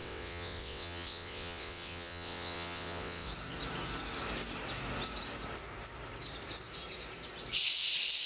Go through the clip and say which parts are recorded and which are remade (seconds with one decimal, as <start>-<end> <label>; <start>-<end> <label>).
0.0-3.3 remade; 3.3-8.3 recorded